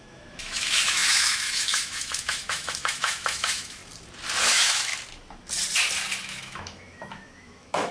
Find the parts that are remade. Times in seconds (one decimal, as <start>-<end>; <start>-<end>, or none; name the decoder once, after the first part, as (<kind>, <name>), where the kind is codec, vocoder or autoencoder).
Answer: 0.0-3.8 (autoencoder, DAC-VAE); 4.4-4.9; 6.2-7.9